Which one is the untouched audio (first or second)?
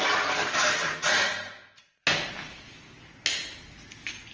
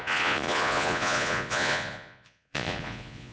first